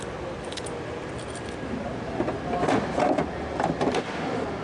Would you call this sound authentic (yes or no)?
yes